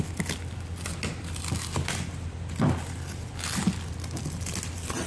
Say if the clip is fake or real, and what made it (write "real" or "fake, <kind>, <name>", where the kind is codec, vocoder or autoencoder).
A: real